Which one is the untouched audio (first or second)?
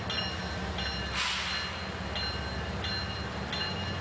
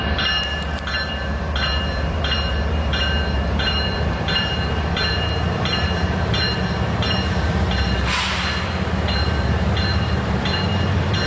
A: first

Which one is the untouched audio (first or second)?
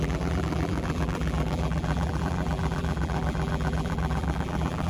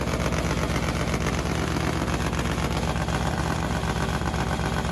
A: second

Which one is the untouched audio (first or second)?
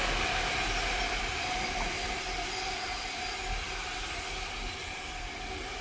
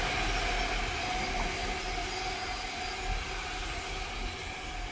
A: second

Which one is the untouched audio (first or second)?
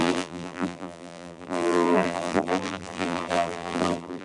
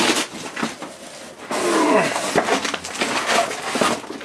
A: second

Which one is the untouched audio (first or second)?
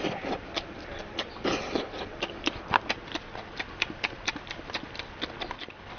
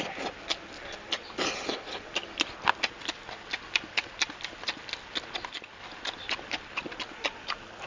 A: second